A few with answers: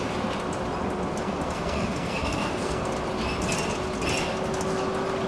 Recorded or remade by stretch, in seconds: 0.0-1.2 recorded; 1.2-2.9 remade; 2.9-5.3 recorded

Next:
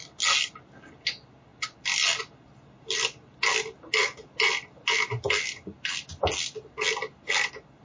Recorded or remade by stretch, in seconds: 0.0-7.8 recorded

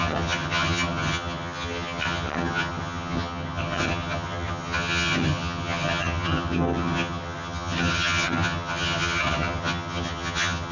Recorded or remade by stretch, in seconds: 0.0-10.7 remade

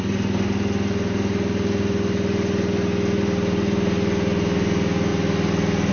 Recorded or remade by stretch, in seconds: 0.0-5.9 recorded

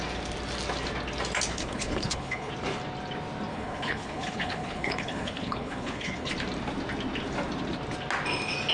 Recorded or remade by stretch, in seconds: 0.0-1.5 recorded; 1.5-2.5 remade; 2.5-3.5 recorded; 3.5-6.3 remade; 6.3-8.7 recorded

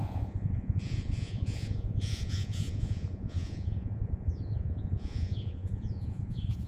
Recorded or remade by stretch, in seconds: 0.0-6.7 remade

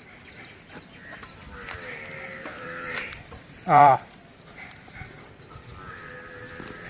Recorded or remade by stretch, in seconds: 0.0-2.3 recorded; 2.3-5.9 remade; 5.9-6.9 recorded